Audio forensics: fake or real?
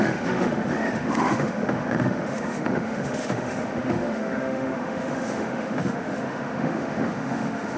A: fake